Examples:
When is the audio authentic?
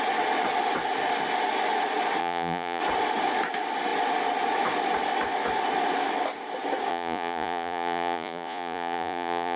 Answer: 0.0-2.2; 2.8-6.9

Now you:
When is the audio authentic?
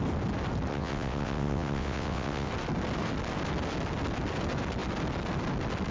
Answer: 0.0-0.7; 2.5-5.9